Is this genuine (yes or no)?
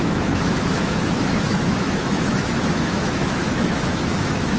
no